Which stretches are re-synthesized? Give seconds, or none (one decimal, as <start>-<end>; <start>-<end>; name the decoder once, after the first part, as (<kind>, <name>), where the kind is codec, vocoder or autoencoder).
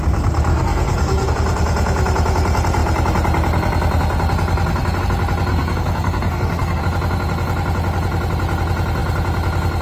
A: 0.5-1.3 (codec, SNAC); 5.5-6.8